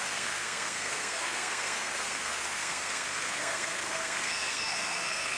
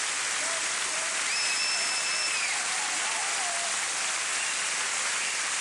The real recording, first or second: second